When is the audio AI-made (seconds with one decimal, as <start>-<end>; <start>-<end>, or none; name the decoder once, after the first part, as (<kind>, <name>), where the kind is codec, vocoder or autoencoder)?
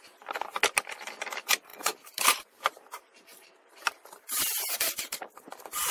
1.7-5.2 (vocoder, BigVGAN v2)